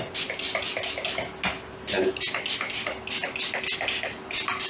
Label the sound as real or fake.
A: real